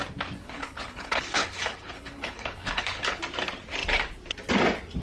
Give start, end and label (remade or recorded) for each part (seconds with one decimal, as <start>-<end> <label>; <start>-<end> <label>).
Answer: 0.0-0.4 recorded; 0.4-3.2 remade; 3.2-5.0 recorded